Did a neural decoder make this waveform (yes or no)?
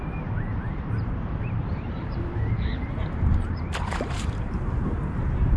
yes